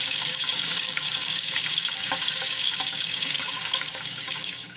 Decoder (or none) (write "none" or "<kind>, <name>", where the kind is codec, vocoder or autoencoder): codec, DAC